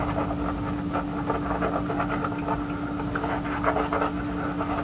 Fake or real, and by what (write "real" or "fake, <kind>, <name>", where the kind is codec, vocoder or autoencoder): real